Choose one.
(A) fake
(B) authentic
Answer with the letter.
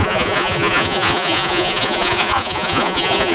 A